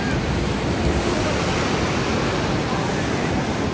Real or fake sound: real